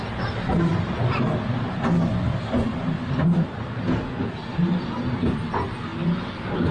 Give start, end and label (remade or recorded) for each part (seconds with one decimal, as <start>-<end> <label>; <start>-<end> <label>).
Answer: 0.0-6.7 recorded